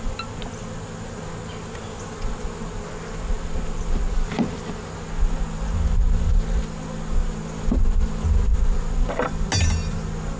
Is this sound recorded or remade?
recorded